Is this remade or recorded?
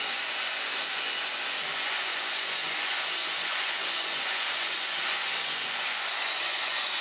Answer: remade